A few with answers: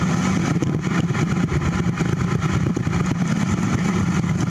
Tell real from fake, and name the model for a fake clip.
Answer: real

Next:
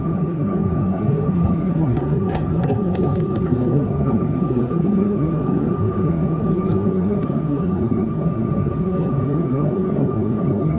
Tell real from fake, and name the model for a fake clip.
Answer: fake, codec, SNAC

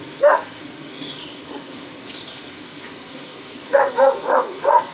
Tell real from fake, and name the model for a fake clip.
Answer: fake, codec, SNAC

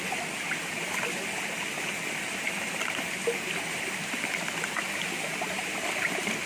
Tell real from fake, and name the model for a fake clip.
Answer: real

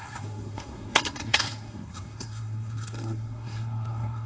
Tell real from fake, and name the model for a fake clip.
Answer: fake, codec, SNAC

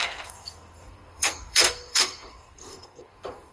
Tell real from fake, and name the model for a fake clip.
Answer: fake, codec, SNAC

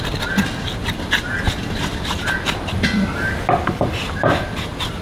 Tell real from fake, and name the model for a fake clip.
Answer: real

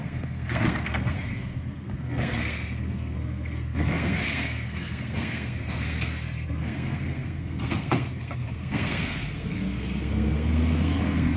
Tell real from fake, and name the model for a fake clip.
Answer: fake, codec, SNAC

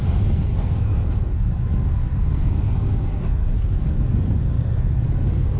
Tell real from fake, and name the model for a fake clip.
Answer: fake, codec, SNAC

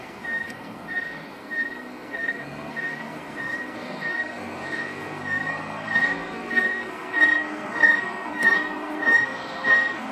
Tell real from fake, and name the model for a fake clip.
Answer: fake, codec, SNAC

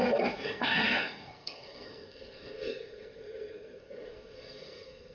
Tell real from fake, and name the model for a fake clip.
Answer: fake, codec, SNAC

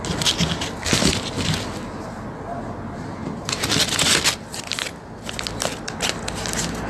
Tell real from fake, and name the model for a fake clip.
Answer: real